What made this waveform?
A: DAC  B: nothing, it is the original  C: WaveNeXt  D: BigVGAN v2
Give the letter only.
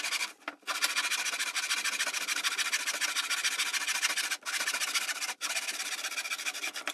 B